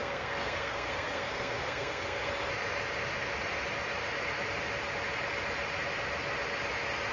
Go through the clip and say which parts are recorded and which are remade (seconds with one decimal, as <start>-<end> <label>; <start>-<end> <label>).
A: 0.0-2.3 remade; 2.3-7.1 recorded